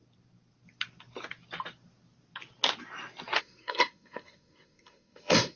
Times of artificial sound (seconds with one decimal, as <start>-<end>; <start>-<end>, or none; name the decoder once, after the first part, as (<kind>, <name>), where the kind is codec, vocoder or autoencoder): 3.4-5.6 (codec, SNAC)